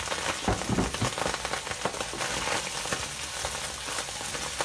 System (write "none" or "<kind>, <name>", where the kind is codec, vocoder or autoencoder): none